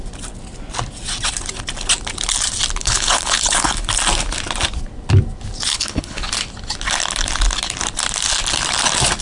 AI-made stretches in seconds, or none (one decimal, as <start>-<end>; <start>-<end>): 2.8-3.9; 5.7-6.3